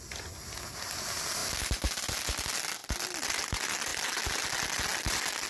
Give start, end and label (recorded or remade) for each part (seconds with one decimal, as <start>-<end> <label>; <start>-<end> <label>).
0.0-5.5 recorded